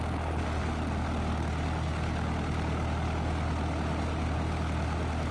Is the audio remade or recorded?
recorded